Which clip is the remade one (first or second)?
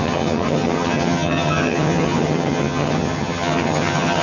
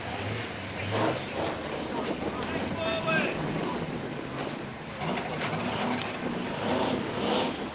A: first